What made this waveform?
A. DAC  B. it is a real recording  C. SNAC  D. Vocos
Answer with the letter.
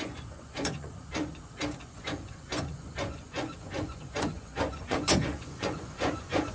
D